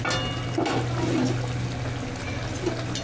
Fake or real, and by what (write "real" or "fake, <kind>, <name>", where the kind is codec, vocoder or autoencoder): real